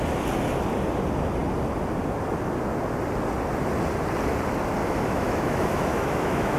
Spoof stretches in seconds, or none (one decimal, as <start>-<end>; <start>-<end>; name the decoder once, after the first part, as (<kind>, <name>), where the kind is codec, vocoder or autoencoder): 4.8-6.6 (autoencoder, DAC-VAE)

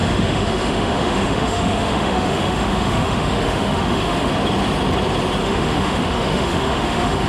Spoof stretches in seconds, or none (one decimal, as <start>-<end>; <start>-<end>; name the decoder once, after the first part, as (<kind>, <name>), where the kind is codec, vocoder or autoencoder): 0.0-4.3 (autoencoder, DAC-VAE); 5.4-7.3

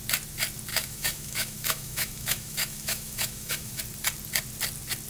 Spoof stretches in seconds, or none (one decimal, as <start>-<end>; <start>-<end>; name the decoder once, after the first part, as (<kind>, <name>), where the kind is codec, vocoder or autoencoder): 0.7-3.8 (autoencoder, DAC-VAE)

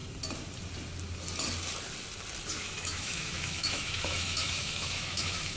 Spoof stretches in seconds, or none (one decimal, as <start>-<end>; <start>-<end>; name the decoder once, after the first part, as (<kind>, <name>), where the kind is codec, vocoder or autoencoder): 2.6-5.6 (autoencoder, DAC-VAE)

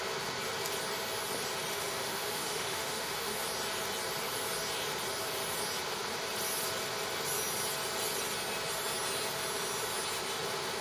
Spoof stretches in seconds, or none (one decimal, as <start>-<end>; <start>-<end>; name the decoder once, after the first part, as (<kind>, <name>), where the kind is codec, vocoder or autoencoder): 1.7-3.4 (autoencoder, DAC-VAE)